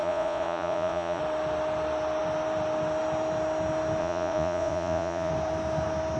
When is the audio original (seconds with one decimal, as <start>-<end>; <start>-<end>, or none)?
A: 1.2-4.0; 5.3-6.2